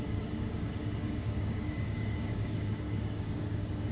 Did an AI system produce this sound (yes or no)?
yes